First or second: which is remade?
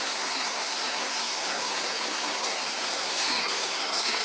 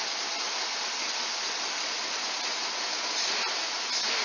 first